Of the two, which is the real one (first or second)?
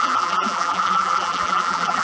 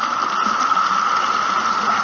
second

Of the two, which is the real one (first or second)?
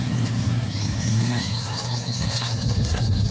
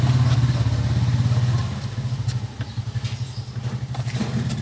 second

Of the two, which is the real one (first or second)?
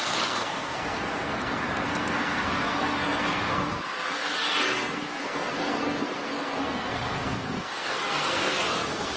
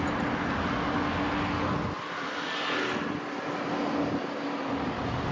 second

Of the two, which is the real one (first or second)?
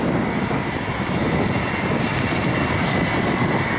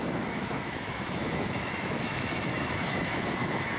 first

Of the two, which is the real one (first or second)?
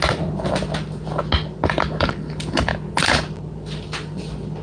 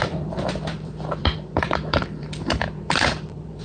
first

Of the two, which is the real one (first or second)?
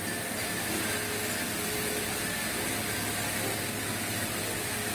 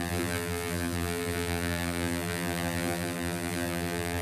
first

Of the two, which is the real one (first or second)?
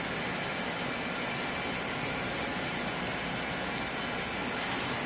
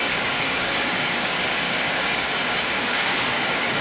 first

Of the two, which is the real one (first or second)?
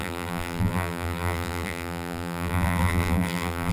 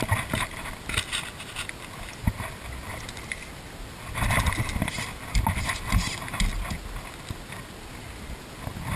second